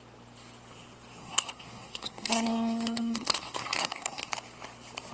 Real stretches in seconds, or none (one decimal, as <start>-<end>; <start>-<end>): 0.0-1.2; 4.3-5.1